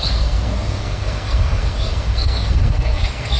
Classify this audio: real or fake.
fake